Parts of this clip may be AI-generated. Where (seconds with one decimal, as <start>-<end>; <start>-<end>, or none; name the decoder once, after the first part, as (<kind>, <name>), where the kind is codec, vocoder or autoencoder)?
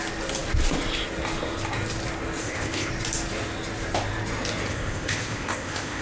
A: 2.4-2.9 (codec, ZipCodec); 4.7-6.0